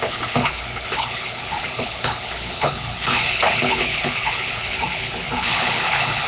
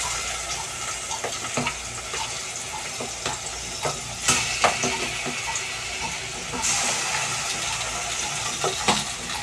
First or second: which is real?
second